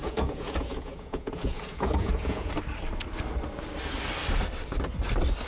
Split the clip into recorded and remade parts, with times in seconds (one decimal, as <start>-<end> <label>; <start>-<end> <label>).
0.0-2.5 remade; 2.5-5.5 recorded